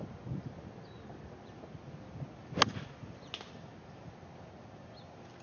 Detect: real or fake real